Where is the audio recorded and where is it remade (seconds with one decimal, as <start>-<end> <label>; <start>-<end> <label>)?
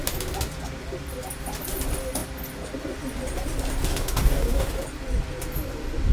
0.0-3.9 recorded; 3.9-4.7 remade; 4.7-6.1 recorded